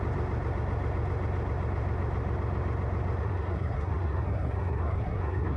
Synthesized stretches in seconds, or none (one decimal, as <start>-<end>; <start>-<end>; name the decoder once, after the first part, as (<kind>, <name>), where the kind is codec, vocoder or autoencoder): 3.2-5.6 (codec, SNAC)